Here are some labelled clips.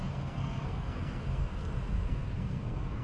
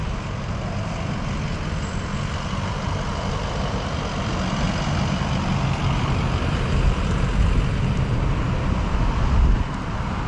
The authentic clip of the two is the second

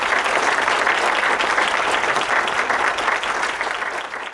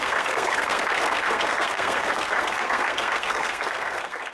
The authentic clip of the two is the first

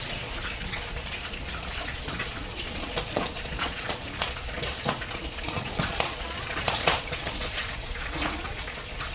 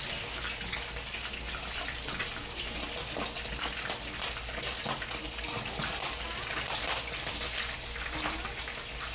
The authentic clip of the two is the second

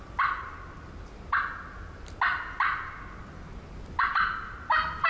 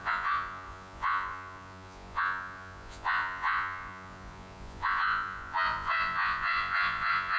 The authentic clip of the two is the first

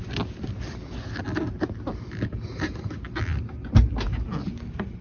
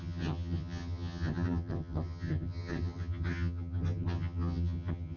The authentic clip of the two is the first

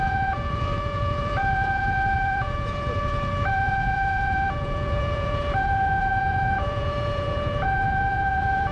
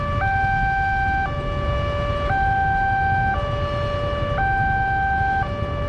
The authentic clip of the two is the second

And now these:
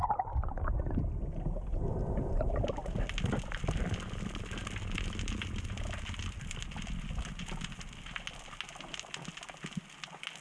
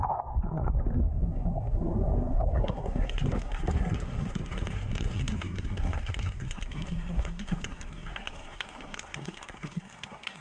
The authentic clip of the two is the first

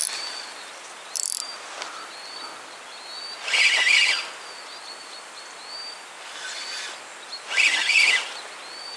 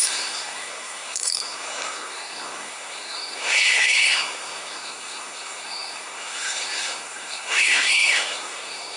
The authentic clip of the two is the first